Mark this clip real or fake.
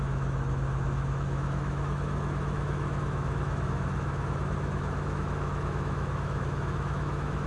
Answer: fake